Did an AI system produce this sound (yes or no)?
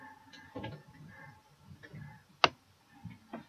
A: no